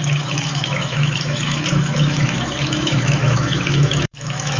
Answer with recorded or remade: remade